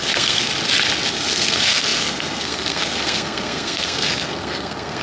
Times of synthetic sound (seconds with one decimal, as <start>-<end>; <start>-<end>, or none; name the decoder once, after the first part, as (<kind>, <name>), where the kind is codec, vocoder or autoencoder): 0.0-0.5 (codec, SNAC); 1.1-5.0